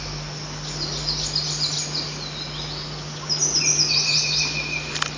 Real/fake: real